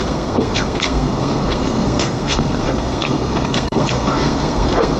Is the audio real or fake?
fake